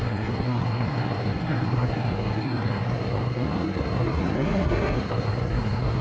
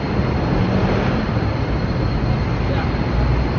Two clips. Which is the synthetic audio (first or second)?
first